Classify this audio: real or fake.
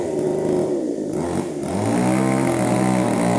real